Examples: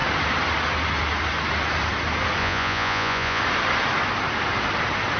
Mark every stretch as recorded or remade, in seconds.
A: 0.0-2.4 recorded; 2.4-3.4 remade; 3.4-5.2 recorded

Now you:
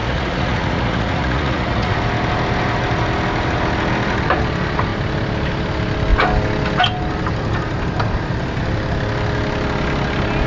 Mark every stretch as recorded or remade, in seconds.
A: 0.0-2.0 remade; 2.0-10.5 recorded

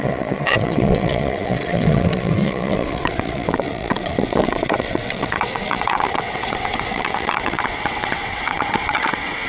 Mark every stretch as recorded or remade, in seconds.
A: 0.0-9.5 remade

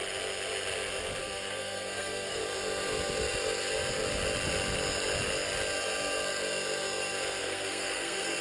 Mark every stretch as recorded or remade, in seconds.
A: 0.0-1.2 recorded; 1.2-2.4 remade; 2.4-7.4 recorded; 7.4-8.4 remade

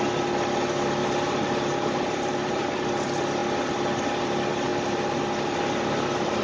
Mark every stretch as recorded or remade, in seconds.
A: 0.0-1.0 recorded; 1.0-2.9 remade; 2.9-4.7 recorded; 4.7-5.2 remade; 5.2-6.4 recorded

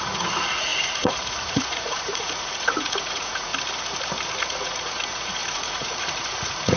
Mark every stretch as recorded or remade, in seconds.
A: 0.0-3.5 remade; 3.5-4.3 recorded; 4.3-6.8 remade

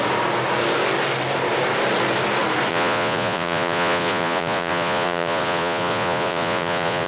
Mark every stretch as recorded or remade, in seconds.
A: 0.0-2.7 recorded; 2.7-7.1 remade

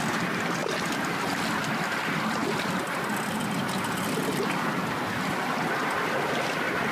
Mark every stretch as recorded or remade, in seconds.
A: 0.0-6.9 recorded